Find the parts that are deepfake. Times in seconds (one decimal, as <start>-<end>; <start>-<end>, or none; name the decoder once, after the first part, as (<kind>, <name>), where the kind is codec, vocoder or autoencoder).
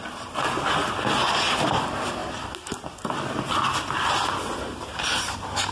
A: none